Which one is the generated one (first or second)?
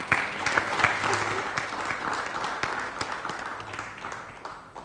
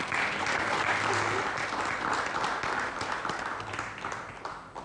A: second